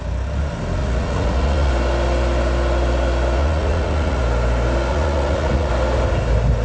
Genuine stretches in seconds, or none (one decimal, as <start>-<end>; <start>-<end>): 0.0-0.8; 1.7-3.4; 4.2-4.9; 5.7-6.6